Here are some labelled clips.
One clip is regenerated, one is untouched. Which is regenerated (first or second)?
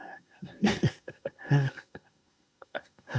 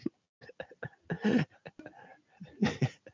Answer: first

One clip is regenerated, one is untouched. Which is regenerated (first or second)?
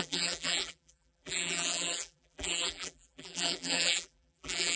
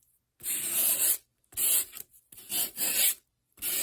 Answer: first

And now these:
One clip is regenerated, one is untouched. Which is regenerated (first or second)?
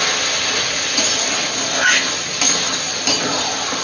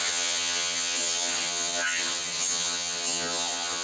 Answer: second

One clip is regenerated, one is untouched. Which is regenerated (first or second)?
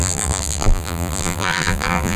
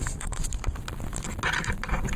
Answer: first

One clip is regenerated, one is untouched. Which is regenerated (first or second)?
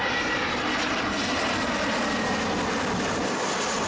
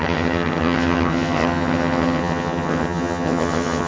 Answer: second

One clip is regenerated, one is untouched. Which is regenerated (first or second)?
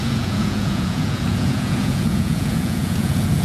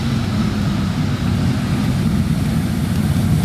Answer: first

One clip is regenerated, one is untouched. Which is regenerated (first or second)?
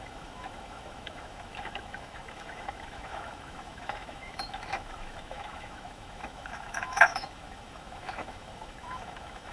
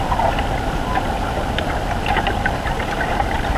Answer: first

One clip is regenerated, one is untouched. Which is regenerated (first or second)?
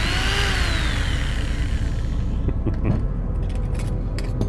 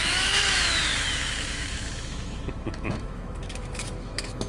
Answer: second